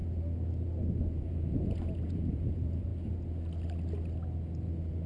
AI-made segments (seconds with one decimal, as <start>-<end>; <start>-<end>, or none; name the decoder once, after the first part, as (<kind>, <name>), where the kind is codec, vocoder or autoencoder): 1.1-2.9 (vocoder, Vocos)